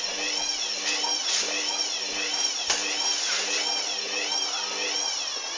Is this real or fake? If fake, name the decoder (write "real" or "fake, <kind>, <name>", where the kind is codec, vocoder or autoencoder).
real